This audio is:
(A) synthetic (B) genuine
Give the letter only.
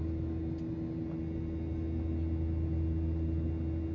B